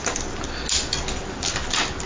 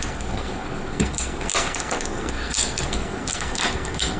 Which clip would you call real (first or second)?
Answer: first